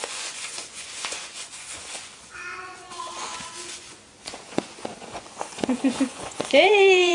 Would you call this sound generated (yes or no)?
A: yes